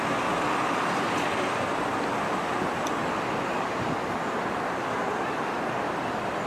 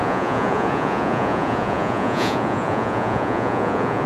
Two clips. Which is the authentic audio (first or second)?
first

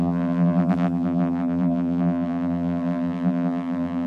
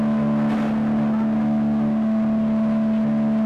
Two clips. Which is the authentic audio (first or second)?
second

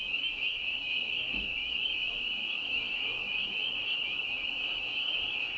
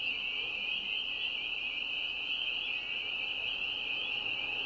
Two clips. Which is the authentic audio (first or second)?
second